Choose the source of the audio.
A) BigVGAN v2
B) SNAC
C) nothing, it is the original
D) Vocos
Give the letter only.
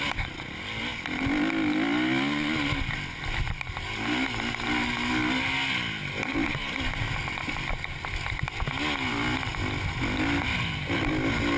C